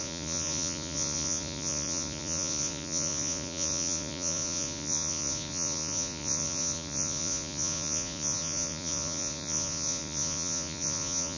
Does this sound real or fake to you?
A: fake